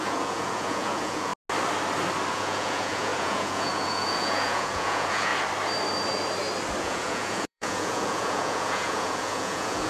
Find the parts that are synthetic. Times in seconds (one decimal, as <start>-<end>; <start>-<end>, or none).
0.0-1.3; 2.3-5.3; 6.8-9.9